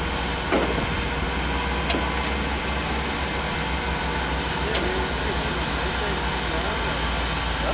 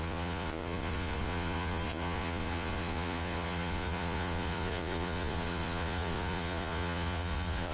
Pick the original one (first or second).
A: first